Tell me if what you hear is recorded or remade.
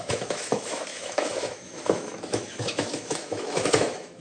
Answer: remade